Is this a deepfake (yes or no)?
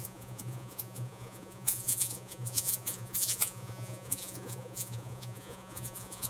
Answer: yes